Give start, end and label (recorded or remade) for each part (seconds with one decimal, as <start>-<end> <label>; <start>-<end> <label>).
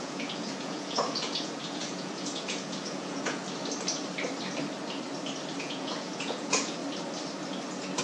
0.0-3.4 remade; 3.4-5.6 recorded; 5.6-6.8 remade; 6.8-8.0 recorded